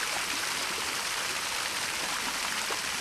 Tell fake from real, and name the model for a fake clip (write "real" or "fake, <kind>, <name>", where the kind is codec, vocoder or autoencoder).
real